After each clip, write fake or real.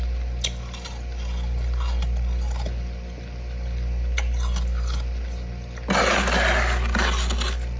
real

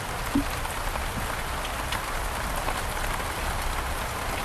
real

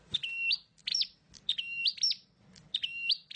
real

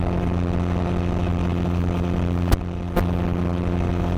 real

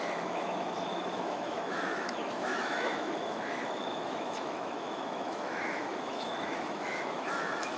fake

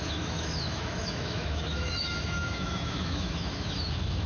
fake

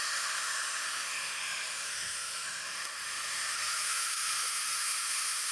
fake